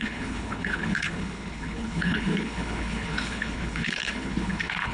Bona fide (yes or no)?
no